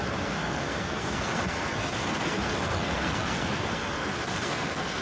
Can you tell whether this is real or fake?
fake